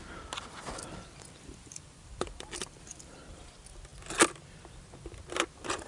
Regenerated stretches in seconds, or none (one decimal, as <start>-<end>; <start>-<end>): 0.6-3.4